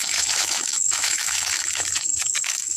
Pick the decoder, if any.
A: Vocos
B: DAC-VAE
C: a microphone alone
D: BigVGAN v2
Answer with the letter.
B